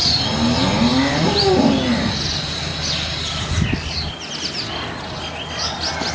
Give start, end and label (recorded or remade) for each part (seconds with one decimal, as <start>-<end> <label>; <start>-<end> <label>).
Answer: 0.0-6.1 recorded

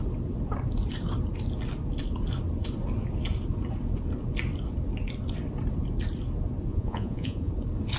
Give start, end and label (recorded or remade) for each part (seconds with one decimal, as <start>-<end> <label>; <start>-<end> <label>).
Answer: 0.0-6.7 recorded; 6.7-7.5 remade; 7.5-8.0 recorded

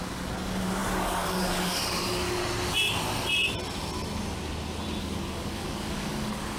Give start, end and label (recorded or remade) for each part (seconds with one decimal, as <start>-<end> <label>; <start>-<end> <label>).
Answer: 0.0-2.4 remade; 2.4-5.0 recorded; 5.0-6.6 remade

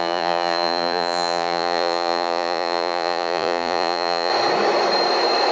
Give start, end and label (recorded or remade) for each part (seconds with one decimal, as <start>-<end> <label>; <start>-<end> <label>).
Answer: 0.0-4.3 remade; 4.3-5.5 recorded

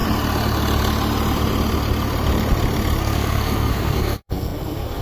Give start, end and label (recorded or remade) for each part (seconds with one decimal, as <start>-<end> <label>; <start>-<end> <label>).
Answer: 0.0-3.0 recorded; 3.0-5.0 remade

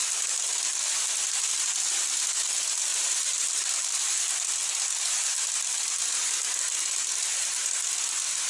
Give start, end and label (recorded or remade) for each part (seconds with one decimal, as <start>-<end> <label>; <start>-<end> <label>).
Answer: 0.0-2.9 recorded; 2.9-4.5 remade; 4.5-8.5 recorded

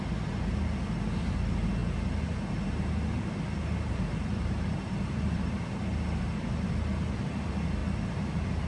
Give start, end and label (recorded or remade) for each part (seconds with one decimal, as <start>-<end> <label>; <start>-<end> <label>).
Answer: 0.0-1.8 remade; 1.8-3.9 recorded; 3.9-8.7 remade